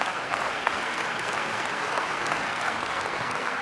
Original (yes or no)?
no